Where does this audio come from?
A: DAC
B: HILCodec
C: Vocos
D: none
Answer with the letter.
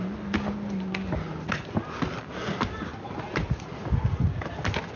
D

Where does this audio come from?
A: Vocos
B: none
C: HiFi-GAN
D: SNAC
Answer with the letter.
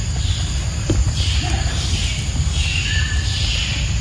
B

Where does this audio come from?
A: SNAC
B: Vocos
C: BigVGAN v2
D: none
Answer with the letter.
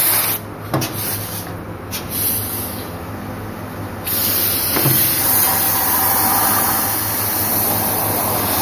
D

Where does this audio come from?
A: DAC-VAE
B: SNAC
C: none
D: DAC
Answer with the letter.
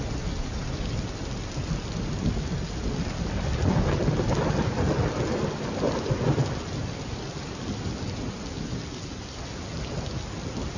C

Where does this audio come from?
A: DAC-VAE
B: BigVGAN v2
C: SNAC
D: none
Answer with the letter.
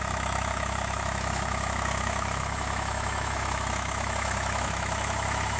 A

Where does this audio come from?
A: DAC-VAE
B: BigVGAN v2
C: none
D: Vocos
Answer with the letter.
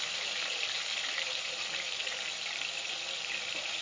B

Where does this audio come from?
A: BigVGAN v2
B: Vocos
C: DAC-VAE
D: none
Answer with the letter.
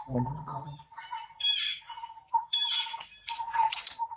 A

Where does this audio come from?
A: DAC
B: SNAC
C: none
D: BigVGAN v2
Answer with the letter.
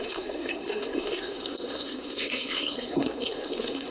B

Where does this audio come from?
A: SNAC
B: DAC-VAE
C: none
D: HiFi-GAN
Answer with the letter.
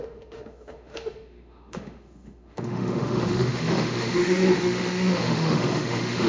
B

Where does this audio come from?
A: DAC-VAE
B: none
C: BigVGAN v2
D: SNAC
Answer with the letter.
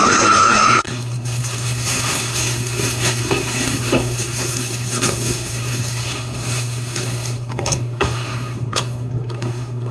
D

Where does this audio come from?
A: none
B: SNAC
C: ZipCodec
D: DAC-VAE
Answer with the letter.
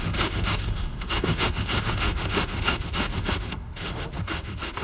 D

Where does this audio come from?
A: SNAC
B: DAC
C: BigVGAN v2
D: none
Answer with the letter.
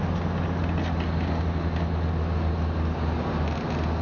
D